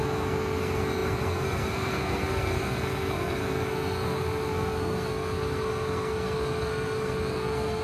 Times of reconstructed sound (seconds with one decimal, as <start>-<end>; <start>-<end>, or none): 0.0-7.8